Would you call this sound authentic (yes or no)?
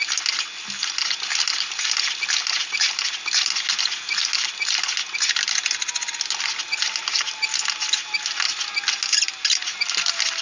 yes